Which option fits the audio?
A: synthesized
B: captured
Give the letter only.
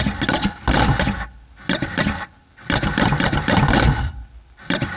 B